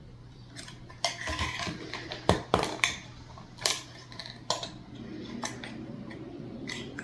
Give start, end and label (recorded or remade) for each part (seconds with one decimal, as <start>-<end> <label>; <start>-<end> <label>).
0.0-4.2 remade; 4.2-5.2 recorded; 5.2-7.0 remade